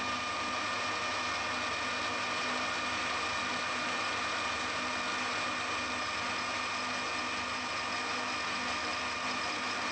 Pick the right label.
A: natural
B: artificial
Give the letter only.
A